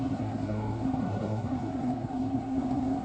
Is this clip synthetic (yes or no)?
yes